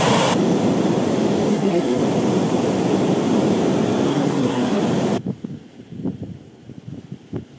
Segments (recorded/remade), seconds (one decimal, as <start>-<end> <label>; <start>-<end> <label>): 0.0-1.5 recorded; 1.5-2.0 remade; 2.0-4.1 recorded; 4.1-4.8 remade; 4.8-7.6 recorded